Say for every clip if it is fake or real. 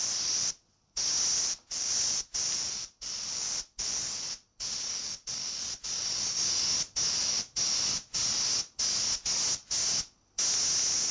real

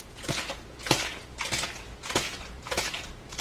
fake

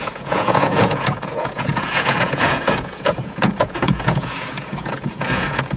fake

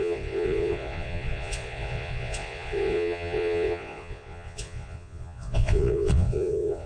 fake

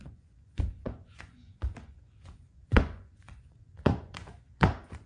fake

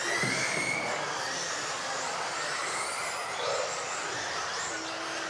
real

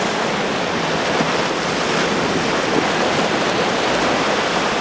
real